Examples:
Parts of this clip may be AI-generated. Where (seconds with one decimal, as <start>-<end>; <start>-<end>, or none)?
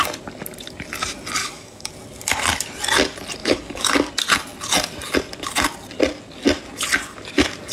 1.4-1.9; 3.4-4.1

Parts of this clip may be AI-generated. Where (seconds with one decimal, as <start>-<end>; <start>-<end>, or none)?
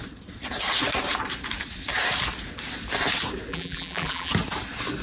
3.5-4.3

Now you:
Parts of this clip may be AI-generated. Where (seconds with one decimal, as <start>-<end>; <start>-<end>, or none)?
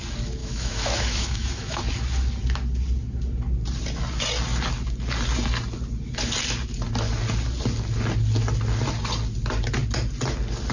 0.4-1.8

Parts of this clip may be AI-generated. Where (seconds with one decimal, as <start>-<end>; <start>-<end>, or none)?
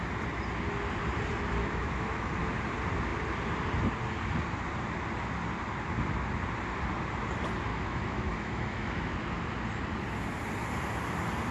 1.6-2.4; 7.7-9.5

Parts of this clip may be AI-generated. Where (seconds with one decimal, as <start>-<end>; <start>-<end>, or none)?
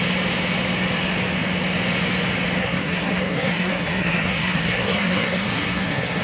2.6-6.2